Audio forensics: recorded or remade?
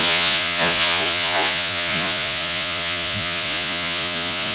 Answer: remade